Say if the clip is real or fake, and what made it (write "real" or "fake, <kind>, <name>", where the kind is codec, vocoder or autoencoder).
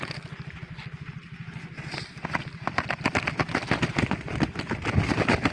real